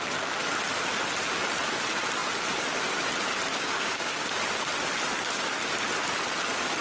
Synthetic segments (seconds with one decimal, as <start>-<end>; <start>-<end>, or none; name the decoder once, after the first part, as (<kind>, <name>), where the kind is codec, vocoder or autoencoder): 3.5-4.4 (codec, DAC)